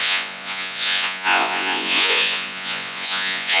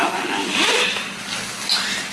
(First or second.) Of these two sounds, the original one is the second